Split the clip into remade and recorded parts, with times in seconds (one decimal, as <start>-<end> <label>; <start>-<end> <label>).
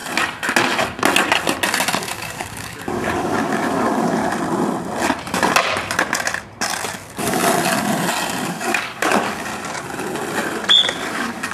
0.0-2.0 recorded; 2.0-4.2 remade; 4.2-6.9 recorded; 6.9-7.4 remade; 7.4-8.5 recorded; 8.5-9.5 remade; 9.5-11.1 recorded; 11.1-11.5 remade